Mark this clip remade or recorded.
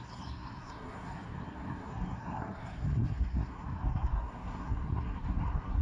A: remade